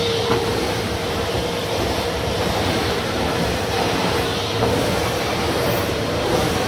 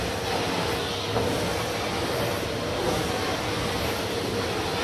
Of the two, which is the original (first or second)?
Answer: second